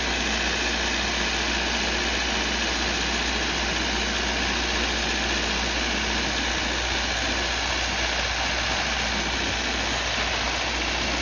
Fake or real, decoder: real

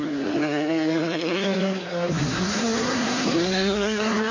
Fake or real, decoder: fake, codec, SNAC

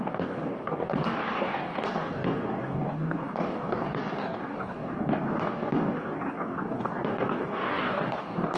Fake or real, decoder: fake, codec, DAC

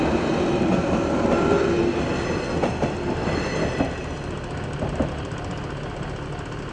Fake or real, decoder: real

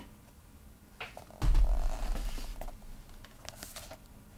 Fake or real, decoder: real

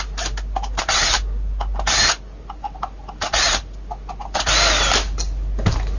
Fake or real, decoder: real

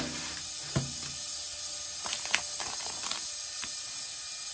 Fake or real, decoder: real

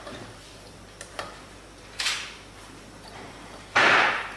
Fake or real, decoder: fake, vocoder, BigVGAN v2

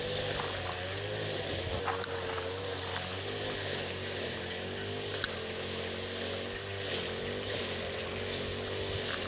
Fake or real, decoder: real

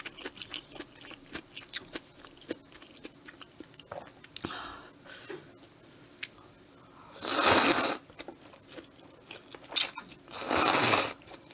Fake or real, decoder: real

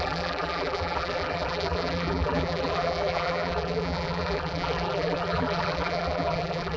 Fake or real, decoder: fake, vocoder, BigVGAN v2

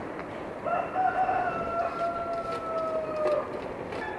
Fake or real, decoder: real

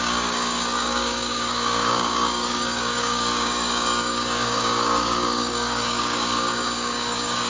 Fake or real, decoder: fake, codec, DAC